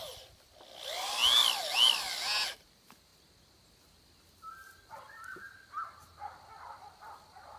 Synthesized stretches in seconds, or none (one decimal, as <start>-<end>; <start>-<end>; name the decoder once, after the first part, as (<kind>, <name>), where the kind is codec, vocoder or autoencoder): none